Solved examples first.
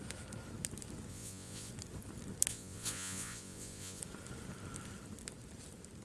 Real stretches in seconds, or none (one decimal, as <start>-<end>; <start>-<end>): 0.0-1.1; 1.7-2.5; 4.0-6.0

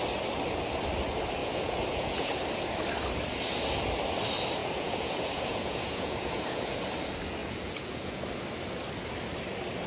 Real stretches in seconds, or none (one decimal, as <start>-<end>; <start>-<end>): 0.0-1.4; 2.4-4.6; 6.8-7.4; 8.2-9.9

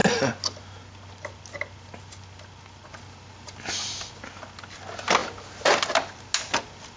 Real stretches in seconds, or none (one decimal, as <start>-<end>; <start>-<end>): 0.0-7.0

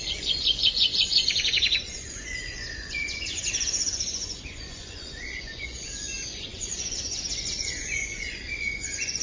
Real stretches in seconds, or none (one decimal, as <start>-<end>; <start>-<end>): none

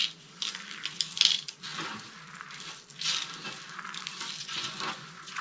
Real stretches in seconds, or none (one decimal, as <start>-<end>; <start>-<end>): 0.0-4.4